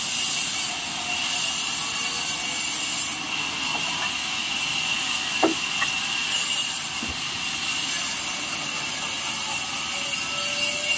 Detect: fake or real real